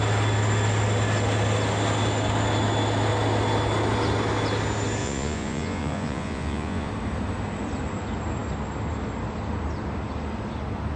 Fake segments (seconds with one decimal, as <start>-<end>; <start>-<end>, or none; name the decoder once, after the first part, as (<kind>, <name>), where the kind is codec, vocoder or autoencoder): 5.0-6.9 (vocoder, Vocos)